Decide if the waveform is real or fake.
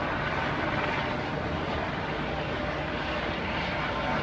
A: real